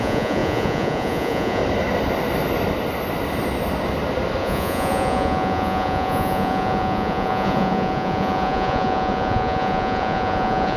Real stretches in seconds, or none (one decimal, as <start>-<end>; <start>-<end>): 1.6-4.4